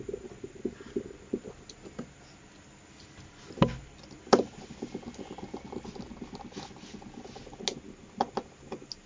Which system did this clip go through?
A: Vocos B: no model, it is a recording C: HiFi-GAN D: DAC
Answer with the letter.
B